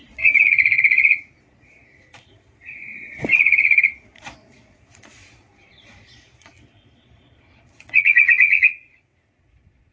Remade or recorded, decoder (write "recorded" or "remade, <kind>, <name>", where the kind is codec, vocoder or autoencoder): remade, vocoder, Vocos